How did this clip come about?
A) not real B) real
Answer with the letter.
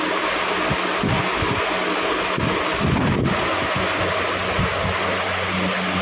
B